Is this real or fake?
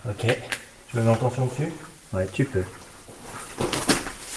real